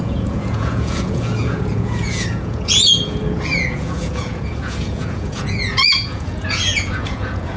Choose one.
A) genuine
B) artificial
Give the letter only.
B